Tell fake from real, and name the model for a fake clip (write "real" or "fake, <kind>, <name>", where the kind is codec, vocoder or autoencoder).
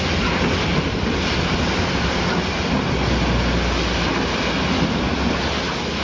real